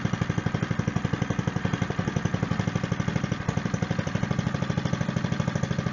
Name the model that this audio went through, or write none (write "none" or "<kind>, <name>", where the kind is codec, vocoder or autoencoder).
vocoder, BigVGAN v2